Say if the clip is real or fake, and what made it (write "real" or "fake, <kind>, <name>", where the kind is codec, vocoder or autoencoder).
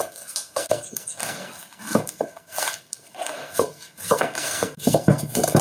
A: fake, codec, SNAC